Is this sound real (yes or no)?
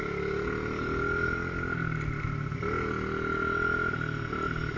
yes